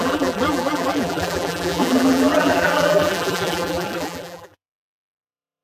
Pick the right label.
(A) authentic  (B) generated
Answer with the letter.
B